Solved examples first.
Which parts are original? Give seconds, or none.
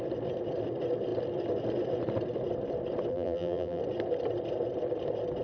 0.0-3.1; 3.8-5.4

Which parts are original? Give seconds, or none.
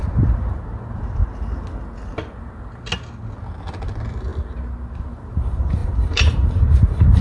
1.2-3.8; 4.3-4.9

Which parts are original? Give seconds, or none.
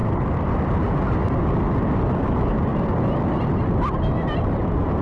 0.0-0.5; 2.7-3.4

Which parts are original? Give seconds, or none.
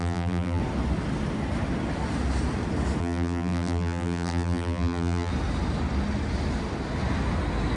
0.6-3.0; 5.3-7.8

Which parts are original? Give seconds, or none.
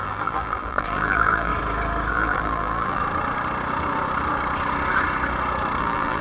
1.5-2.1; 3.0-5.8